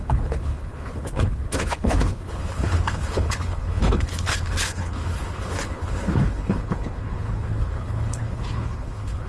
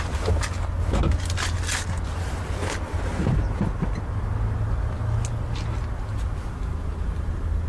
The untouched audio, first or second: second